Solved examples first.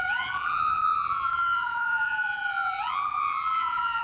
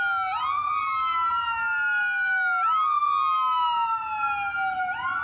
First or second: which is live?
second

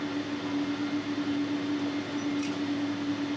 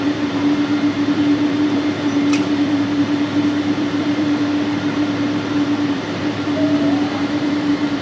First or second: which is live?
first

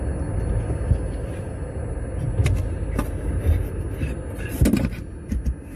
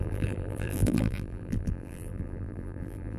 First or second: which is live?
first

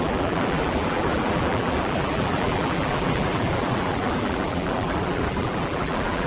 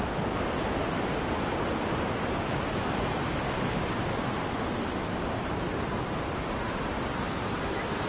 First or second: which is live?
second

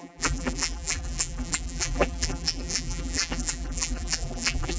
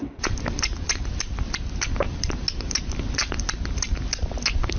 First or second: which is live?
second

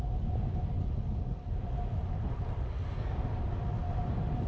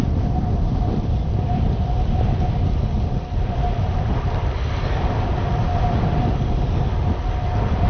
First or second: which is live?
first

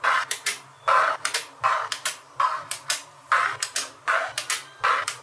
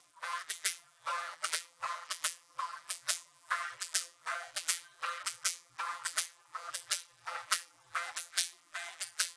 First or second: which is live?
first